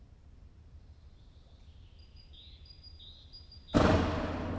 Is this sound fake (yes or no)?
yes